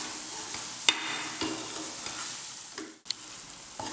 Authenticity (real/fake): real